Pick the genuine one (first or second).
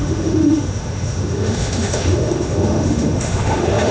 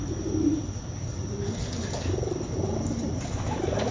second